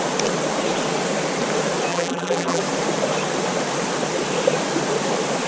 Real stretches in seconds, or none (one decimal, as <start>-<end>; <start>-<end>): 0.0-1.9; 2.6-5.5